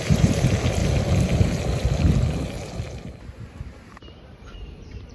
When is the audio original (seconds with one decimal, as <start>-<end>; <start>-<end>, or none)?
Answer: 0.8-3.5